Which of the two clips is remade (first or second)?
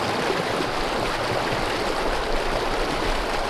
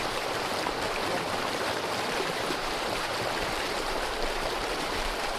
second